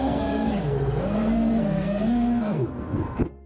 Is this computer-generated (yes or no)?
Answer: yes